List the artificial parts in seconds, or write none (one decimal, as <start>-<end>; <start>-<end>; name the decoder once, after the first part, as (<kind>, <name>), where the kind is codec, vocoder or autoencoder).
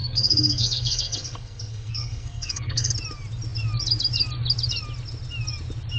0.0-2.9 (codec, SNAC)